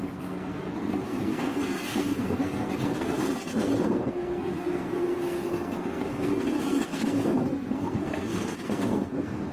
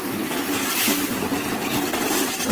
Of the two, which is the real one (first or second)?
second